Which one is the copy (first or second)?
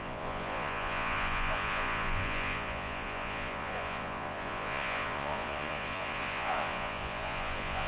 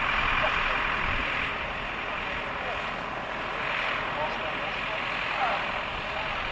first